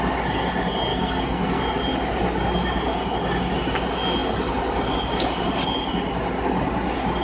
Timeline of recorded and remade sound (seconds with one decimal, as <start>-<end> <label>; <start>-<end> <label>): 0.0-0.9 recorded; 0.9-1.6 remade; 1.6-7.2 recorded